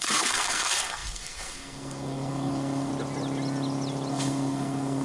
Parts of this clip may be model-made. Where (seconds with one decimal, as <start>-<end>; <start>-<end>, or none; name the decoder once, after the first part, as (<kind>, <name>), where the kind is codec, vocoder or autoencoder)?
0.0-2.9 (codec, SNAC); 4.1-5.0